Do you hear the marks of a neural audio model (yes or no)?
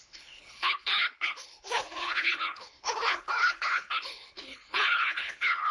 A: yes